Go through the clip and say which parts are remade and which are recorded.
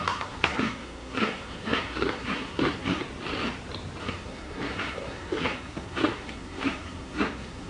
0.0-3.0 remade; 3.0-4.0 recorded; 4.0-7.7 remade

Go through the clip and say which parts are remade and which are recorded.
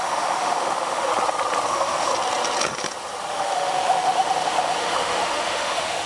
0.0-1.1 remade; 1.1-1.7 recorded; 1.7-2.1 remade; 2.1-3.3 recorded; 3.3-6.1 remade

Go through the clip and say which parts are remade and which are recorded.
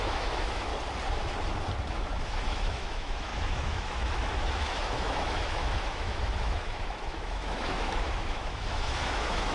0.0-0.7 remade; 0.7-1.9 recorded; 1.9-9.5 remade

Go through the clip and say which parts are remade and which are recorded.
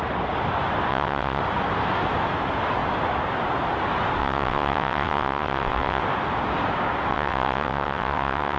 0.0-0.9 recorded; 0.9-1.4 remade; 1.4-4.2 recorded; 4.2-6.0 remade; 6.0-7.1 recorded; 7.1-8.6 remade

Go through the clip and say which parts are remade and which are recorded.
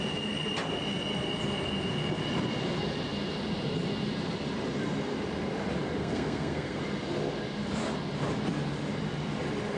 0.0-6.0 recorded; 6.0-6.8 remade; 6.8-9.8 recorded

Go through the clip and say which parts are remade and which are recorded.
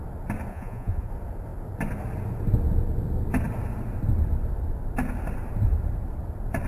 0.0-0.5 recorded; 0.5-1.1 remade; 1.1-6.7 recorded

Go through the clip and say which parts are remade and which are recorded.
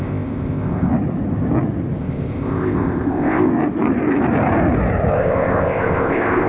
0.0-0.9 remade; 0.9-2.0 recorded; 2.0-3.5 remade; 3.5-5.1 recorded; 5.1-6.5 remade